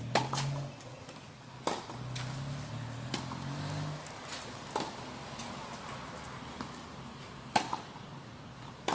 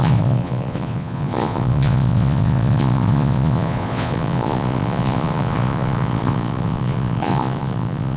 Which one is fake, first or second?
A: second